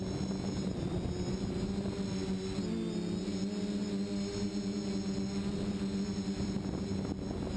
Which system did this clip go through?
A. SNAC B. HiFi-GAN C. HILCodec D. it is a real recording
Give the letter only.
D